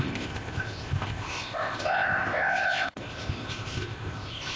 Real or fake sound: fake